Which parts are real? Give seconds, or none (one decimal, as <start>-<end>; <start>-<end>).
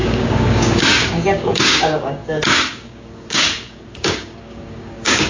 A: none